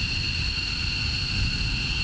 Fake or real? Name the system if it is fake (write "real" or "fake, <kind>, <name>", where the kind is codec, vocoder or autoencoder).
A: real